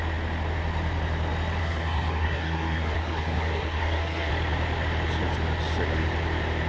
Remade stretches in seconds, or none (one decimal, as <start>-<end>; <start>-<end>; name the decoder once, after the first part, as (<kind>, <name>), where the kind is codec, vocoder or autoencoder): 1.6-4.3 (codec, SNAC)